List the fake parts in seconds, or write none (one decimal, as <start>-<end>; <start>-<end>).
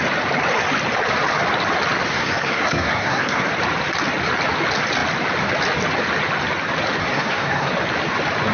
2.1-3.5; 7.0-7.7